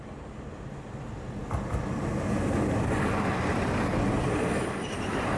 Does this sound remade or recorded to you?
recorded